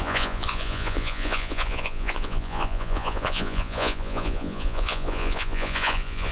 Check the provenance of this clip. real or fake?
fake